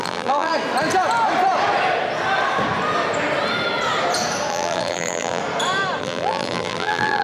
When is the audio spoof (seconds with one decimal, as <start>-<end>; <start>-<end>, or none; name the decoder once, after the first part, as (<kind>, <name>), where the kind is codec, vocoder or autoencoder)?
0.0-0.5 (vocoder, BigVGAN v2); 4.5-5.4; 6.0-7.2